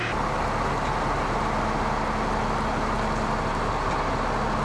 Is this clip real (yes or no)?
yes